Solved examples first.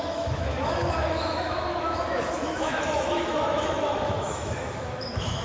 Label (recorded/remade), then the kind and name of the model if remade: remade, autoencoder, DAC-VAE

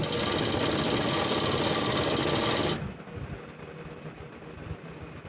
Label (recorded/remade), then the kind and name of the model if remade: recorded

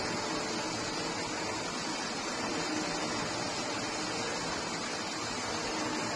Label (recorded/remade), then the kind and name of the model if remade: recorded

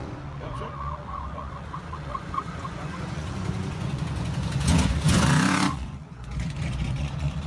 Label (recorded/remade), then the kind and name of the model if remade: remade, vocoder, Vocos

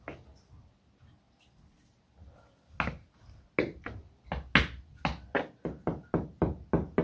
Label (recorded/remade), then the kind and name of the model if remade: recorded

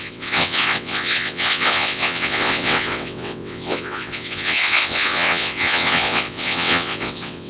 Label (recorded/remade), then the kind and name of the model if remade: remade, vocoder, WaveNeXt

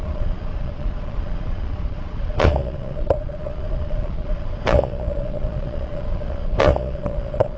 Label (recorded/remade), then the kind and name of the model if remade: remade, vocoder, Vocos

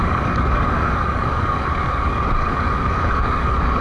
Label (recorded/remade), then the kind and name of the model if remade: remade, codec, DAC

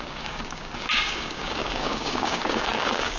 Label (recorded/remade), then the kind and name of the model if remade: remade, codec, DAC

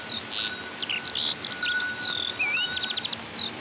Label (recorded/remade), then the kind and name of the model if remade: recorded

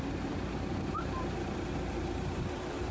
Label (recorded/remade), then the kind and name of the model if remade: remade, vocoder, BigVGAN v2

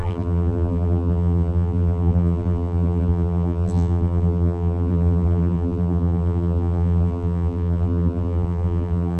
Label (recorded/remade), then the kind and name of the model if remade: remade, vocoder, BigVGAN v2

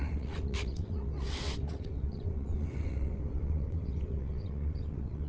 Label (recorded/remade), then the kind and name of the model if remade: remade, vocoder, WaveNeXt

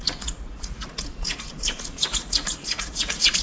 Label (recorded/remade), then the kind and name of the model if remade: remade, vocoder, Vocos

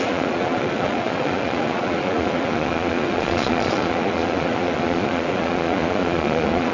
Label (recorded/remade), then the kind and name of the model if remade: remade, vocoder, Vocos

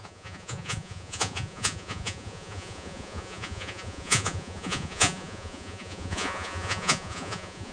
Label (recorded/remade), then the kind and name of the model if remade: remade, vocoder, Vocos